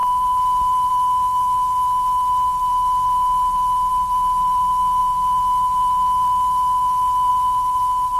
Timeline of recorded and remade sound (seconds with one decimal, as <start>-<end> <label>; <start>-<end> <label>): 0.0-0.9 remade; 0.9-8.2 recorded